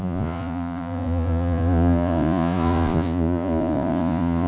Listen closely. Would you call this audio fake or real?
fake